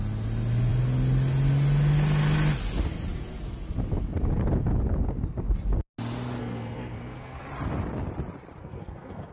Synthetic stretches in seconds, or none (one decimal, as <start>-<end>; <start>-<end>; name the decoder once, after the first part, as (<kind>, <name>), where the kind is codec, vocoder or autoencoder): 6.4-7.4 (codec, SNAC); 8.6-9.3